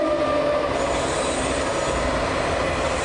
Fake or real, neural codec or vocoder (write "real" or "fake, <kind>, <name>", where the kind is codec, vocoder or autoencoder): fake, vocoder, BigVGAN v2